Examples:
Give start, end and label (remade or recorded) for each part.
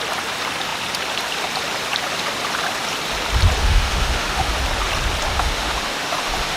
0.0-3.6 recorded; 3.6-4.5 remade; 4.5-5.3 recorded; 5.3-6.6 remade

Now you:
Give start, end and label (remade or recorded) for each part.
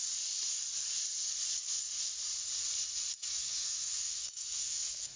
0.0-3.1 recorded; 3.1-5.2 remade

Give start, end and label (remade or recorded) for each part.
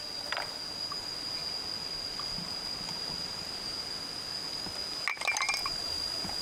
0.0-6.4 recorded